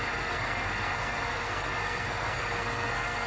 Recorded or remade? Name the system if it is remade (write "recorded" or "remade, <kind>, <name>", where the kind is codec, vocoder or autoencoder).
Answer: remade, codec, SNAC